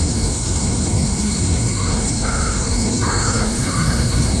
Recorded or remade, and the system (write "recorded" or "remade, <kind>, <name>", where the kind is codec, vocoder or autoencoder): remade, codec, SNAC